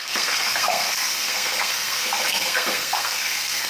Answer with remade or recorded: remade